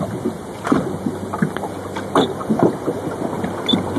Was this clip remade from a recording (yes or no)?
yes